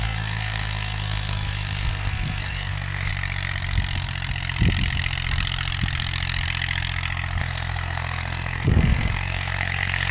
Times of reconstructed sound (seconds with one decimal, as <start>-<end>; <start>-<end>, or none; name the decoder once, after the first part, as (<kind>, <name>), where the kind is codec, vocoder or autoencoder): 0.0-3.1 (codec, SNAC); 7.4-10.1